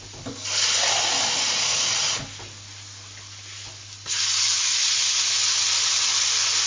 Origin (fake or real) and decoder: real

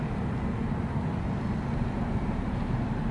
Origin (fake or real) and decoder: real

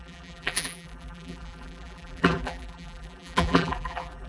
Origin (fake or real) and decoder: fake, vocoder, BigVGAN v2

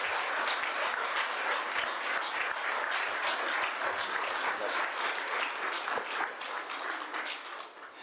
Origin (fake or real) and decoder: real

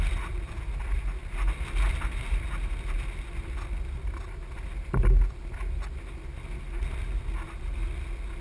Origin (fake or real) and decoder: real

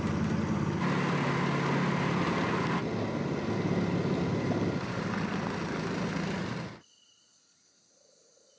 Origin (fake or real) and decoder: real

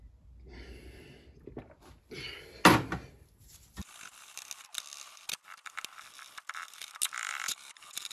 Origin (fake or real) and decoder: real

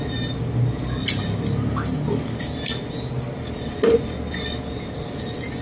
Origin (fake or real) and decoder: real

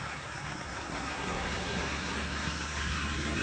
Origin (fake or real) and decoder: fake, codec, SNAC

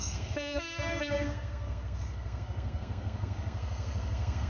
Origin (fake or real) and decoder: fake, codec, SNAC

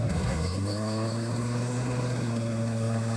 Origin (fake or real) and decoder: fake, codec, SNAC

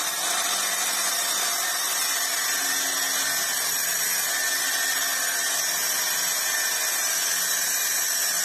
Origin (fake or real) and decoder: real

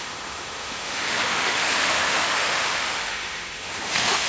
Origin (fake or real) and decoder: fake, autoencoder, DAC-VAE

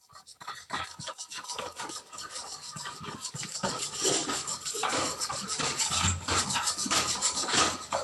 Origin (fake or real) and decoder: fake, codec, DAC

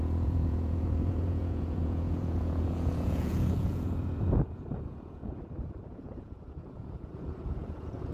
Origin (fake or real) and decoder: fake, vocoder, Vocos